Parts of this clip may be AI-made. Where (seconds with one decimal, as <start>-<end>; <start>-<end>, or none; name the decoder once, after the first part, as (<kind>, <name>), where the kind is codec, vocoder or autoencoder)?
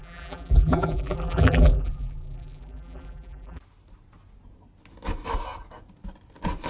0.0-3.6 (vocoder, BigVGAN v2)